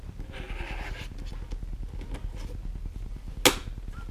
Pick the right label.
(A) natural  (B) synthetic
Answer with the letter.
A